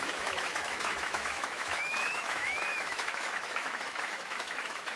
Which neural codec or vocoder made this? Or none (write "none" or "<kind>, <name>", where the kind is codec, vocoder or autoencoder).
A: autoencoder, DAC-VAE